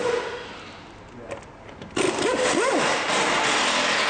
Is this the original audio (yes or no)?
yes